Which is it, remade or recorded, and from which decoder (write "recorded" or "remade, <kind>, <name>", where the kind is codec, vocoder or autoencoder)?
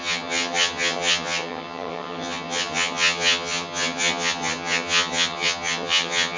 remade, vocoder, HiFi-GAN